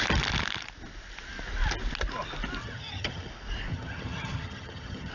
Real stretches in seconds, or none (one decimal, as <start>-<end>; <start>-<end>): 0.0-2.6; 3.3-3.7